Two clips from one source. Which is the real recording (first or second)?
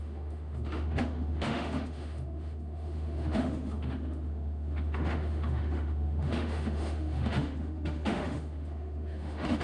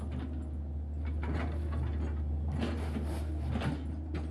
second